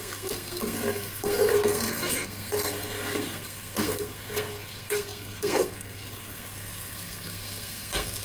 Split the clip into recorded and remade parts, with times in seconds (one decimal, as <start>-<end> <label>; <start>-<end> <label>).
0.0-8.2 remade